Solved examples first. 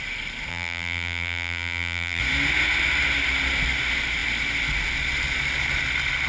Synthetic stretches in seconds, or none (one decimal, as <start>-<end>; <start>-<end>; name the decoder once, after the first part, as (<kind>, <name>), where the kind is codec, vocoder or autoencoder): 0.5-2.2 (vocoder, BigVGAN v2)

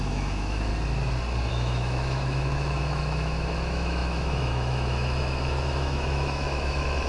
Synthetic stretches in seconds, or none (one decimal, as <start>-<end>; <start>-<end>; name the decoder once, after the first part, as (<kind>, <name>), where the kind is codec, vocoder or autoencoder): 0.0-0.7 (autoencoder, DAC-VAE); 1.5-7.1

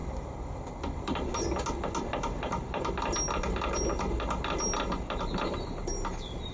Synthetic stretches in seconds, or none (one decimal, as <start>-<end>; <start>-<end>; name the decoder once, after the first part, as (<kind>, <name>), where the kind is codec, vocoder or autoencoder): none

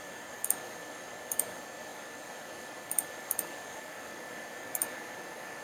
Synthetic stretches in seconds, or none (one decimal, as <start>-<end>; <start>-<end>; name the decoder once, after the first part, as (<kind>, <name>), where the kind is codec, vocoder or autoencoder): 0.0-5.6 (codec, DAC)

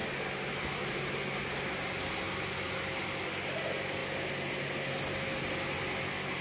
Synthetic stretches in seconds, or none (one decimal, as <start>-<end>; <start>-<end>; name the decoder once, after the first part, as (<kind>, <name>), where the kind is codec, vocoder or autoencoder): none

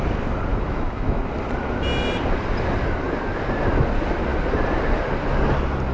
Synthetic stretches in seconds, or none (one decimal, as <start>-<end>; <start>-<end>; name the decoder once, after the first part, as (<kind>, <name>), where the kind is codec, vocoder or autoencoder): 0.5-1.2 (autoencoder, DAC-VAE)

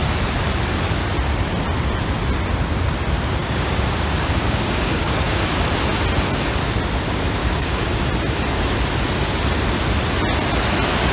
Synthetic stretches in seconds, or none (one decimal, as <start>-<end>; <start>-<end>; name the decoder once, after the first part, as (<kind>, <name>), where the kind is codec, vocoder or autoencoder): 3.4-5.4 (codec, DAC); 7.4-8.0

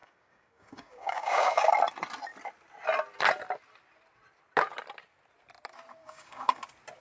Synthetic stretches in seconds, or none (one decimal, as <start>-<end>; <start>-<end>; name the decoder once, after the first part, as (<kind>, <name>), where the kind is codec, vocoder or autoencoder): 0.0-1.7 (codec, DAC); 6.0-6.6